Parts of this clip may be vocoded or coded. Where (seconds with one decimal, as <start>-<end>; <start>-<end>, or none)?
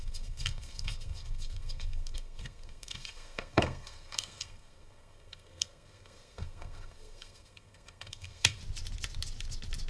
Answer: 0.0-8.6